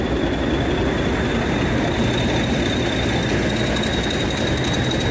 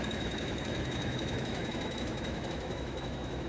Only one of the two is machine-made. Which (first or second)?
second